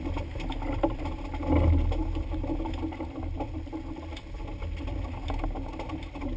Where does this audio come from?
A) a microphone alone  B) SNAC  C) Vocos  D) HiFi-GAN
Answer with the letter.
A